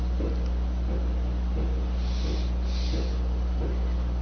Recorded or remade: recorded